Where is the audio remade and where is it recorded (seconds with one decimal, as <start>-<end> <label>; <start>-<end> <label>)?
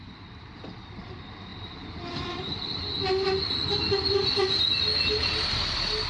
0.0-6.1 recorded